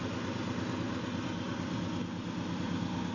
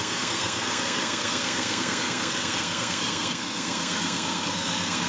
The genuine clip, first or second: first